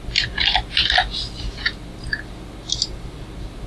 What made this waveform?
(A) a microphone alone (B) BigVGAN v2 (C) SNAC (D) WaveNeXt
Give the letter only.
A